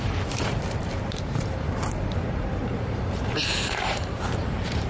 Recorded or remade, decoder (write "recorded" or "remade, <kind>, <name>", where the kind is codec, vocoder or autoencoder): remade, vocoder, BigVGAN v2